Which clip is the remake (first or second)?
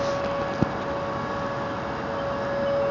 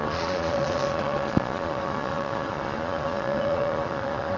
second